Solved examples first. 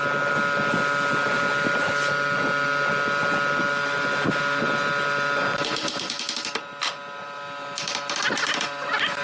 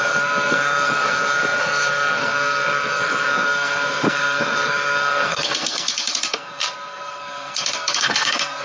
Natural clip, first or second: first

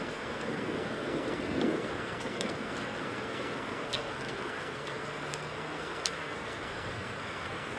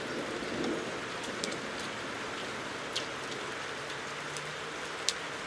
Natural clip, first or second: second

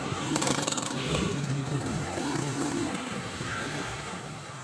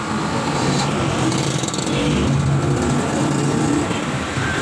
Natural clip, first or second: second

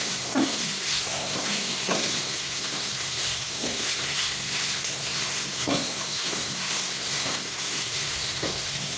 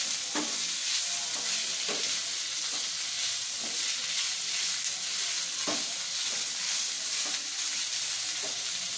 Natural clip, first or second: second